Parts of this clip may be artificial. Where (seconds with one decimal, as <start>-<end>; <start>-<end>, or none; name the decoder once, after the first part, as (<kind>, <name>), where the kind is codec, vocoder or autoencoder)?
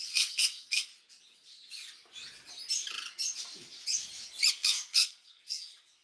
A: 0.0-0.9 (codec, SNAC); 4.5-6.0